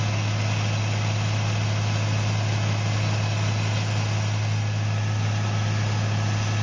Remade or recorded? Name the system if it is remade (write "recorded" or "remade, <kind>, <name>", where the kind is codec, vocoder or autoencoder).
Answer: recorded